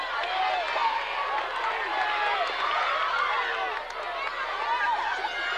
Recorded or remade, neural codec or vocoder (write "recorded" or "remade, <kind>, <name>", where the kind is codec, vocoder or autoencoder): recorded